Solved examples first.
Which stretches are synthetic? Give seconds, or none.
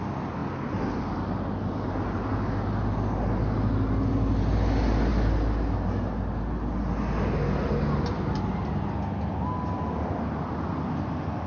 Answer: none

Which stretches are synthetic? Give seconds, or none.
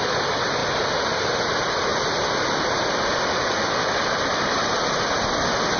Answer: none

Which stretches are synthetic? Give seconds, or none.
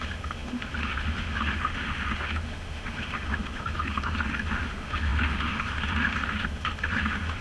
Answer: 0.0-7.4 (autoencoder, DAC-VAE)